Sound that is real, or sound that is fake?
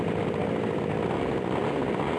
real